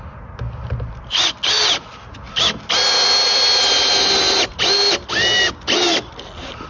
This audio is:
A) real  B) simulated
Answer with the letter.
A